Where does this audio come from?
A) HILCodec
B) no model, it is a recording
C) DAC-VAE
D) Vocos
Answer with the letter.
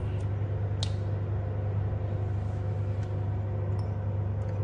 B